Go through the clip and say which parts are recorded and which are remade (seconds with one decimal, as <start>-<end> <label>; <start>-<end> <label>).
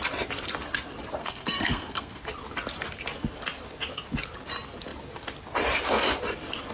0.0-1.2 recorded; 1.2-2.2 remade; 2.2-6.7 recorded